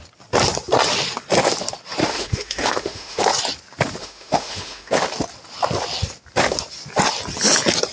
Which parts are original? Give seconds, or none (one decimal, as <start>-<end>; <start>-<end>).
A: 0.0-2.0; 3.2-4.0; 4.9-7.9